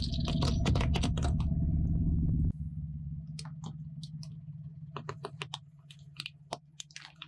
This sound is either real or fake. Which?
real